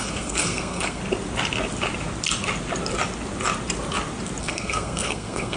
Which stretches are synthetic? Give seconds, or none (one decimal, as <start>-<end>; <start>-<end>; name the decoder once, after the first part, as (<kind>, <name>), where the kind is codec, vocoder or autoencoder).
0.0-1.0 (codec, SNAC); 4.4-5.6